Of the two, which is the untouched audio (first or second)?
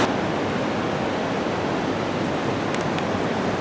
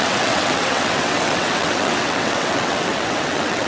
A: first